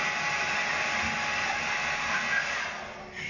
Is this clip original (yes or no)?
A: yes